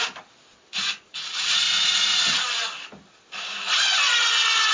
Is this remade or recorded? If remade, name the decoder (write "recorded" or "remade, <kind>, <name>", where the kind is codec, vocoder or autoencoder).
recorded